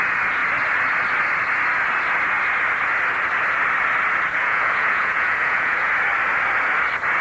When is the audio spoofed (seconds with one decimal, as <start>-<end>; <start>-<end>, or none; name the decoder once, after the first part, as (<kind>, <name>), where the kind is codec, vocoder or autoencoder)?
4.4-5.9 (vocoder, Vocos)